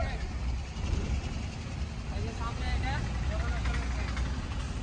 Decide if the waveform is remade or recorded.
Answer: recorded